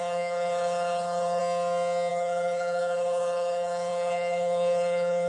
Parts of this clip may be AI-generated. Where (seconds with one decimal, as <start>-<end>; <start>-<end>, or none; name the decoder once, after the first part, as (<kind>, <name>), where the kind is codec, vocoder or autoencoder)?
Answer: 0.0-1.4 (codec, HILCodec); 2.1-5.3